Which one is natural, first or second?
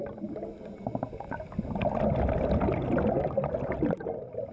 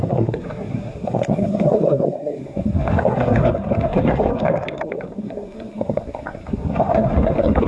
first